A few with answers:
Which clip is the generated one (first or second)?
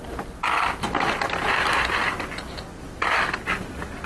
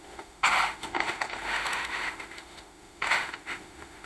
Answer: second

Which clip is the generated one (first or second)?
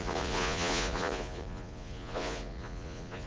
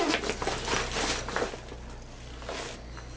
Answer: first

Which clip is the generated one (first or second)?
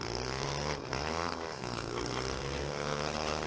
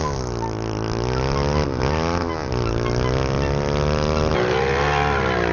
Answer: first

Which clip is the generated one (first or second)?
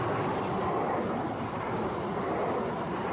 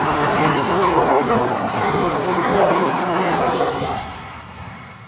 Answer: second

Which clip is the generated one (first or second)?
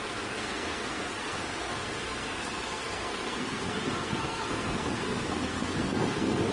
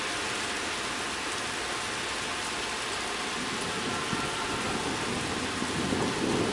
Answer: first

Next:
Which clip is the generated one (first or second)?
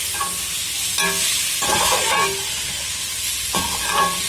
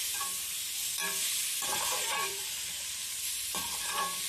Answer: second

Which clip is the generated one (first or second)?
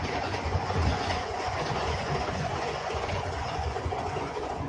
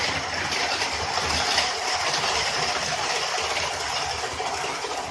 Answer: first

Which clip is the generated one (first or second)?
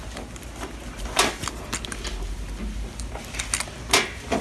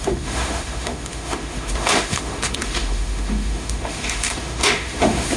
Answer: second